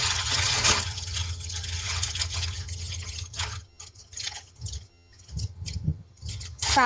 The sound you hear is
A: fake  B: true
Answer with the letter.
A